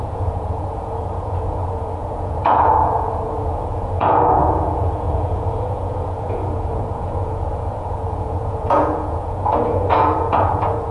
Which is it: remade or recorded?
remade